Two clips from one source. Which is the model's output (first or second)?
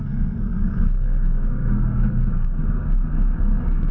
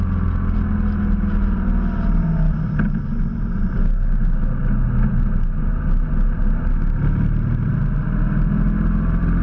first